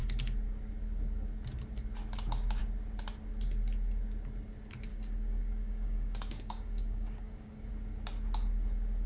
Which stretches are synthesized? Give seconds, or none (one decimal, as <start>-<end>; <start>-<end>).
4.9-7.7